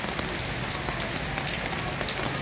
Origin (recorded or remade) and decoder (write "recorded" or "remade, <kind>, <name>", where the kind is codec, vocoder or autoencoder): recorded